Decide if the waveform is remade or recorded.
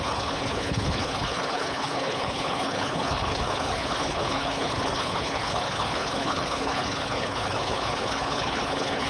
remade